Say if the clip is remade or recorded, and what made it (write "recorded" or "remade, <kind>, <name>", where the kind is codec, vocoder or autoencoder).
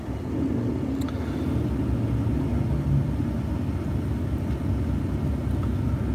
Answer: recorded